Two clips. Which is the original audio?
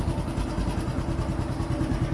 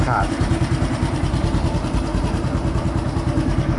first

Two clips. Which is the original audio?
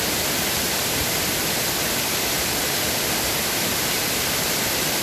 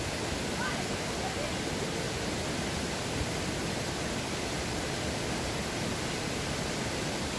second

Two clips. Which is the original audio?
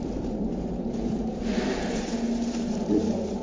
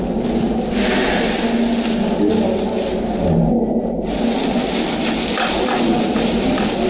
second